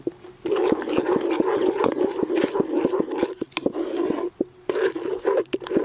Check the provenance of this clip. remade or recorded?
recorded